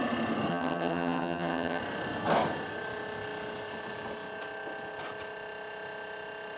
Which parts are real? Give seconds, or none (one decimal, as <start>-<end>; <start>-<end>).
0.0-0.5; 1.8-6.6